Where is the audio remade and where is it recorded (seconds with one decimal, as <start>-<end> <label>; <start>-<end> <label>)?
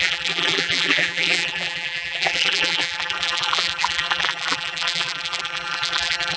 0.0-6.4 remade